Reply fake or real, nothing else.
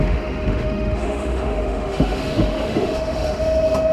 fake